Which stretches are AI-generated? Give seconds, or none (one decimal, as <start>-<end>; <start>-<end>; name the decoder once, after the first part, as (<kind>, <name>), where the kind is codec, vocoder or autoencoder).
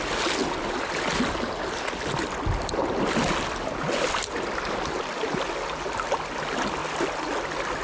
none